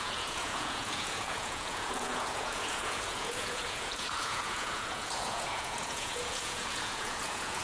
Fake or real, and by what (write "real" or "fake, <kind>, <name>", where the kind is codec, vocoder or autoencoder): fake, vocoder, Vocos